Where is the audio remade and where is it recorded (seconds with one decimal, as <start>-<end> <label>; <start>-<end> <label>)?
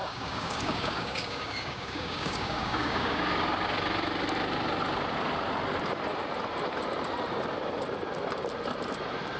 0.0-3.2 remade; 3.2-9.4 recorded